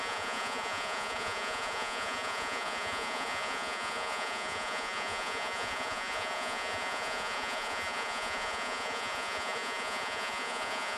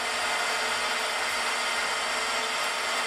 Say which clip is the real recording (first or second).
second